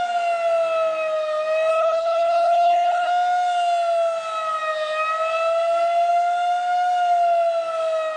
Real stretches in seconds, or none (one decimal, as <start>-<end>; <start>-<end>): 0.0-1.7; 3.1-8.2